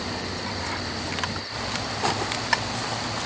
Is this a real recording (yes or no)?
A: no